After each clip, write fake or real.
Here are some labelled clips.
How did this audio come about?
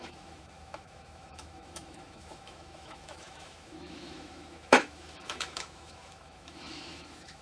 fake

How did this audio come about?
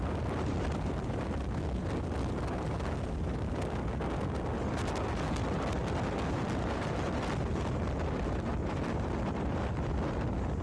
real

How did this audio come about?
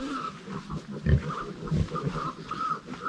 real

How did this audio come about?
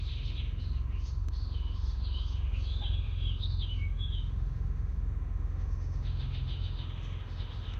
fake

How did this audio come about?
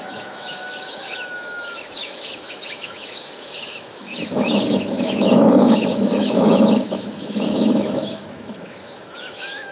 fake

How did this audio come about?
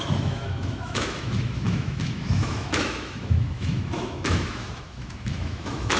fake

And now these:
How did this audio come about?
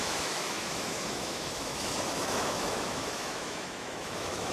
fake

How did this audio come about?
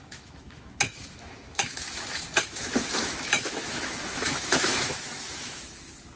fake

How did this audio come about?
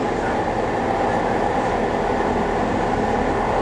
real